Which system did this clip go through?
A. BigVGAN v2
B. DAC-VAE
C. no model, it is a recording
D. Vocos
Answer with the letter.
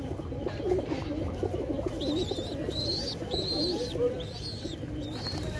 C